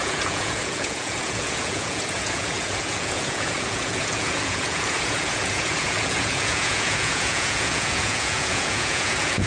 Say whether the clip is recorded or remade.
remade